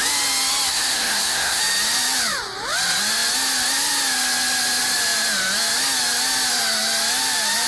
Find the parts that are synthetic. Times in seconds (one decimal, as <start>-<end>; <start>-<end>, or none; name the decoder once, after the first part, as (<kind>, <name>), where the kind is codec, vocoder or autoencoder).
0.7-1.6 (codec, SNAC)